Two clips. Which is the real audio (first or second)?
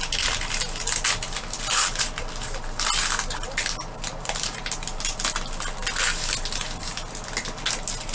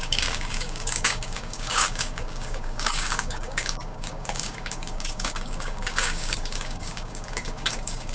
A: first